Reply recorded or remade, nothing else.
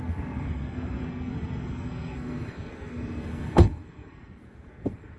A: remade